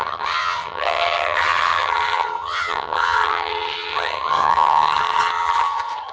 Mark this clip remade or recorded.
remade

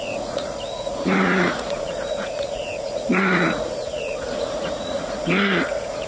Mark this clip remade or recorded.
remade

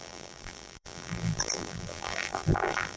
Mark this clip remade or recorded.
remade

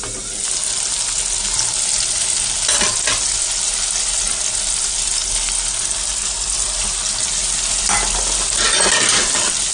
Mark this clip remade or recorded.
recorded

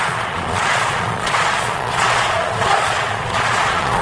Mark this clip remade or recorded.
remade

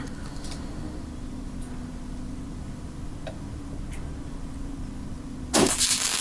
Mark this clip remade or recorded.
recorded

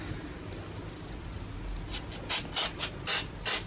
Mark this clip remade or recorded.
recorded